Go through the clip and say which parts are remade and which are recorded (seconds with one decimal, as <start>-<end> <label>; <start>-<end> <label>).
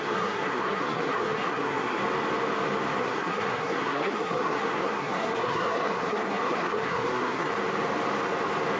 0.0-2.0 remade; 2.0-3.0 recorded; 3.0-7.5 remade; 7.5-8.8 recorded